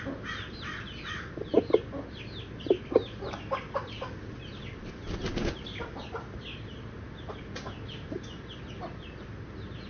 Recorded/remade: recorded